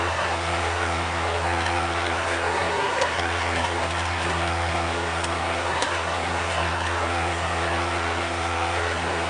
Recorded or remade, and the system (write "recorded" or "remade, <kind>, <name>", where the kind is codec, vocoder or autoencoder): remade, codec, SNAC